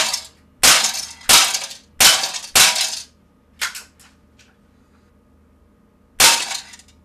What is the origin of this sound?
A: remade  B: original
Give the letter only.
B